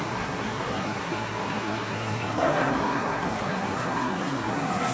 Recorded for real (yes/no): no